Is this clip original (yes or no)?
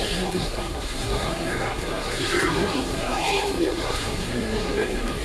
no